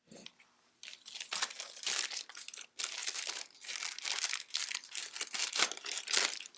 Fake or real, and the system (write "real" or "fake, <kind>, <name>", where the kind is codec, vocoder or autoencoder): real